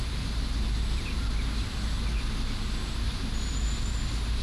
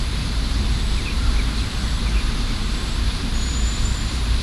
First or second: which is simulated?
second